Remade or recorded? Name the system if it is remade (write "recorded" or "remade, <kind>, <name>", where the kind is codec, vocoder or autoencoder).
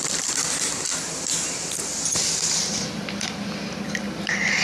recorded